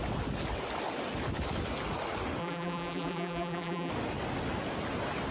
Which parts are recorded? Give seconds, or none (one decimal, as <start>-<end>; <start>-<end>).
0.0-2.4; 3.9-5.3